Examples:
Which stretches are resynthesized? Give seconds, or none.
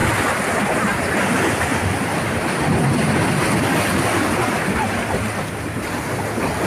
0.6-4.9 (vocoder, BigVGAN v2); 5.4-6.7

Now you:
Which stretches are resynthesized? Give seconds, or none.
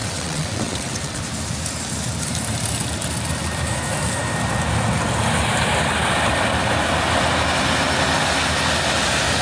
0.0-1.2 (vocoder, WaveNeXt)